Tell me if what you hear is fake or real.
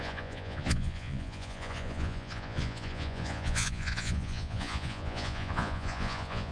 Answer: fake